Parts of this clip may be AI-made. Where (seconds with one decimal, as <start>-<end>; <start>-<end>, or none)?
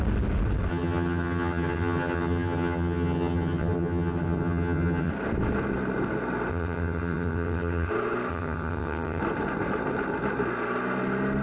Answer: 0.7-5.1; 6.5-7.9; 8.3-9.2